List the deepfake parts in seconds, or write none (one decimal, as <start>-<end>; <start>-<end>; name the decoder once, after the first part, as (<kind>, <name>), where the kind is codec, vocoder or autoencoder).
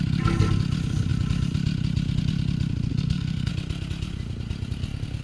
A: 2.9-3.5 (codec, SNAC)